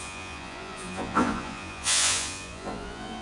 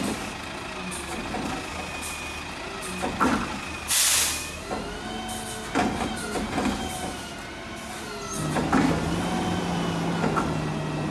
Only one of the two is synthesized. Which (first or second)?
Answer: first